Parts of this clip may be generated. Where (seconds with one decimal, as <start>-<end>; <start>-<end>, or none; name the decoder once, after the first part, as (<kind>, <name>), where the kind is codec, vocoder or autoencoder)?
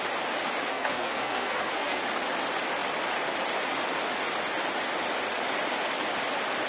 0.7-2.0 (codec, SNAC)